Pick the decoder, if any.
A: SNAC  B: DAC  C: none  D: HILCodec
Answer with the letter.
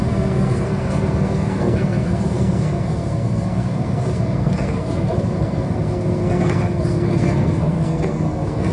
A